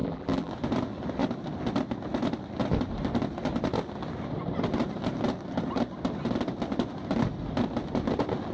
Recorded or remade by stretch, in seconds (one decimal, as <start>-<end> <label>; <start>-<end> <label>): 0.0-0.5 remade; 0.5-8.5 recorded